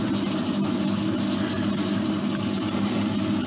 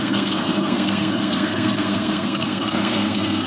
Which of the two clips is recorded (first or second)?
first